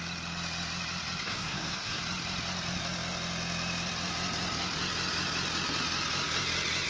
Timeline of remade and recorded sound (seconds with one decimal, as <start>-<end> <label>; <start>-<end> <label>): 0.0-1.2 recorded; 1.2-2.0 remade; 2.0-6.9 recorded

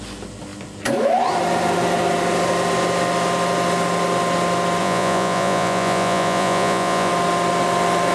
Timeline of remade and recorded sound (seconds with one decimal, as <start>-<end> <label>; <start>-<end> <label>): 0.0-4.8 recorded; 4.8-7.1 remade; 7.1-8.1 recorded

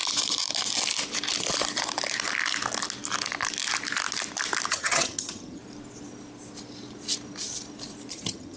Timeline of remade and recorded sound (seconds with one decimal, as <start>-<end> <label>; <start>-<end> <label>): 0.0-4.7 recorded; 4.7-5.6 remade; 5.6-8.1 recorded; 8.1-8.6 remade

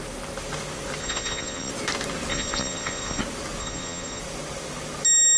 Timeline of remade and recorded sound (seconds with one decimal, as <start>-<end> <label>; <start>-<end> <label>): 0.0-1.0 recorded; 1.0-1.7 remade; 1.7-2.3 recorded; 2.3-3.2 remade; 3.2-3.6 recorded; 3.6-4.2 remade; 4.2-5.4 recorded

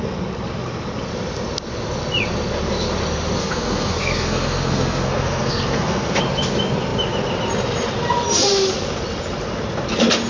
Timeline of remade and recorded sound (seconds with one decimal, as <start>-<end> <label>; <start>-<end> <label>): 0.0-3.4 recorded; 3.4-6.2 remade; 6.2-10.3 recorded

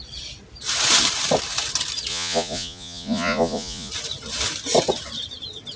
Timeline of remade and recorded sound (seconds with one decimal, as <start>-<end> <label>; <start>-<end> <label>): 0.0-2.1 recorded; 2.1-3.9 remade; 3.9-5.8 recorded

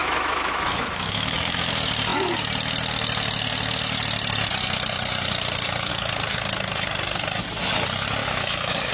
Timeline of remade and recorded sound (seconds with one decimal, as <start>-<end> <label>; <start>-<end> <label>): 0.0-1.7 remade; 1.7-8.2 recorded; 8.2-8.9 remade